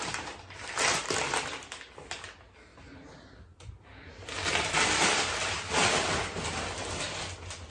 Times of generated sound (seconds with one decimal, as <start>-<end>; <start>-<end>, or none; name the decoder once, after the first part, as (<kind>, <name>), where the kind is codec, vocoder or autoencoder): none